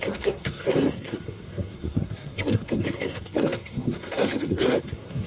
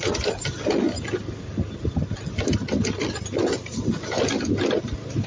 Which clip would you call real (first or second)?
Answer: second